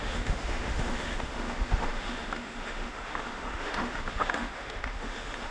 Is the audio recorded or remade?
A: remade